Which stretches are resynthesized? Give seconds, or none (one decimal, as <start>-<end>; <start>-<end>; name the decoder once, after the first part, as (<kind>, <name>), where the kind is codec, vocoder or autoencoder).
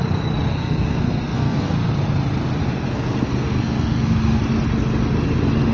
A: 0.5-1.9 (codec, SNAC); 2.6-4.4